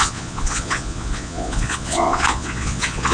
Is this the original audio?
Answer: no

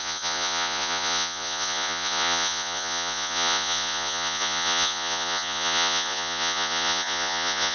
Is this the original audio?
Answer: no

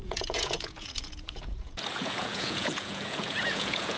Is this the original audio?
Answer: no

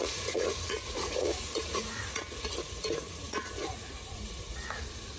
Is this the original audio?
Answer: no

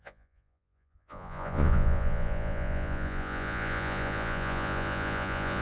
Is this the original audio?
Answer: no